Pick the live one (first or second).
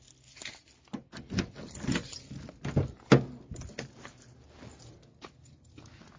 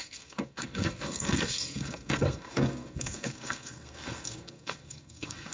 first